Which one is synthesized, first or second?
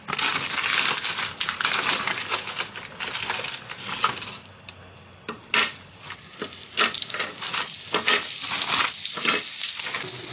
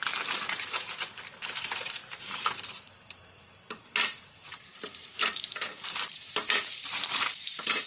second